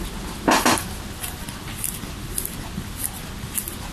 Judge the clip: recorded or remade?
recorded